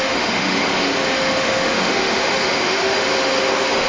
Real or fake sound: fake